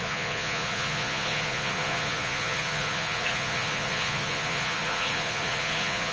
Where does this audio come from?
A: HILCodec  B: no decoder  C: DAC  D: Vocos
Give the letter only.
D